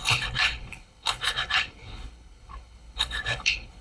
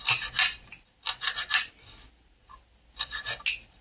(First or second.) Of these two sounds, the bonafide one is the second